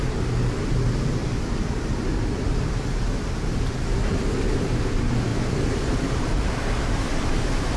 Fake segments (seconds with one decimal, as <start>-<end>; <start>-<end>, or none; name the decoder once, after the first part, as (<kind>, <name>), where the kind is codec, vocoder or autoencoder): 1.2-1.8 (vocoder, BigVGAN v2); 5.3-6.4